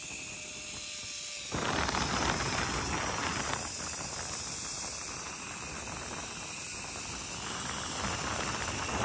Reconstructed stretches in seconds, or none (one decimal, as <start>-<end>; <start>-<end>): none